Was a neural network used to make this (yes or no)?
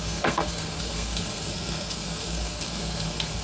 yes